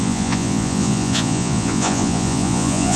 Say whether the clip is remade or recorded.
remade